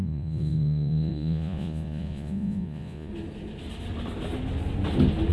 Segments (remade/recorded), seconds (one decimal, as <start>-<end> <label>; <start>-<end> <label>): 0.0-3.1 remade; 3.1-5.3 recorded